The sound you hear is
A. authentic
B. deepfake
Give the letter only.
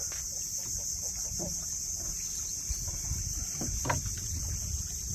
A